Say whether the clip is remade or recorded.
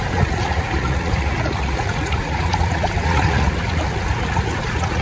remade